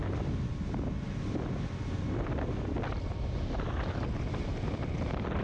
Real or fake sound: real